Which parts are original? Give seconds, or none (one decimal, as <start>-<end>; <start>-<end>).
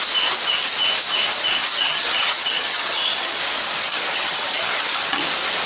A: 0.0-1.6; 3.4-3.9; 5.2-5.7